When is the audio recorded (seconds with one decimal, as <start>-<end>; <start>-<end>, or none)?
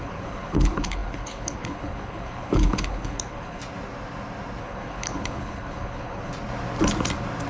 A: 3.6-4.6; 6.3-7.5